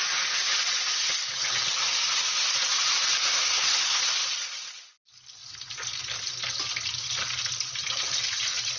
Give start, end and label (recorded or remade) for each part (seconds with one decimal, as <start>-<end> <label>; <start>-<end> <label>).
0.0-3.2 recorded; 3.2-4.0 remade; 4.0-8.8 recorded